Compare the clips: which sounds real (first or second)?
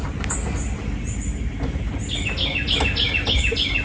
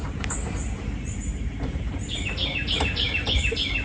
first